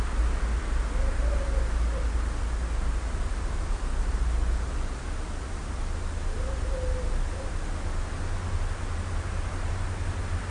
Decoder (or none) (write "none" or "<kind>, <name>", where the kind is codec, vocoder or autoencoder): none